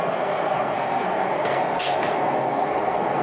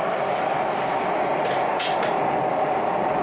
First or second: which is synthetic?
first